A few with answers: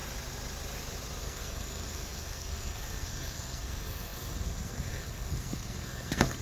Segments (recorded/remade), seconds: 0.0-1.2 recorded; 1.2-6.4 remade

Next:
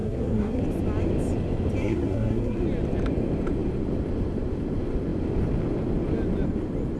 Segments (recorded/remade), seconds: 0.0-0.6 remade; 0.6-1.8 recorded; 1.8-2.6 remade; 2.6-7.0 recorded